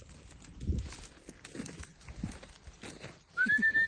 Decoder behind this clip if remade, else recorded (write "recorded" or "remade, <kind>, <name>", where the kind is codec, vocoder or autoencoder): recorded